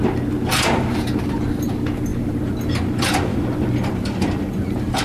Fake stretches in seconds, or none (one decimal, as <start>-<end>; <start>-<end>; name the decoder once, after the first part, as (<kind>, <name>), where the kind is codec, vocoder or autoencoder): 3.3-5.0 (vocoder, BigVGAN v2)